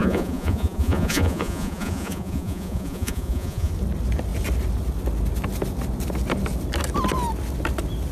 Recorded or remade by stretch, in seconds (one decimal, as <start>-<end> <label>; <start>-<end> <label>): 0.0-3.7 remade; 3.7-8.1 recorded